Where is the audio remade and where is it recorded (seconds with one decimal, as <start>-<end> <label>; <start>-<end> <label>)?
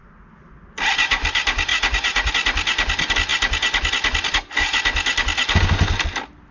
0.0-1.7 recorded; 1.7-2.3 remade; 2.3-6.5 recorded